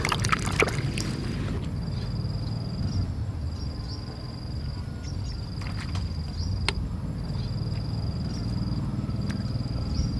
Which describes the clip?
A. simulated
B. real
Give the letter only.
B